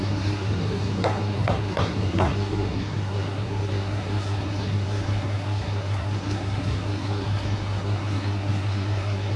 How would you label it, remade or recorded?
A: remade